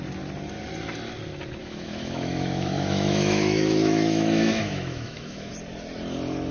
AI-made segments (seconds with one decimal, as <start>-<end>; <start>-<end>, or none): 1.6-5.5